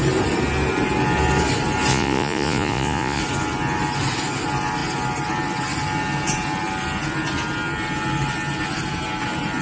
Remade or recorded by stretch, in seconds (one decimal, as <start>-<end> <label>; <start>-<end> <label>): 0.0-1.9 recorded; 1.9-3.2 remade; 3.2-9.6 recorded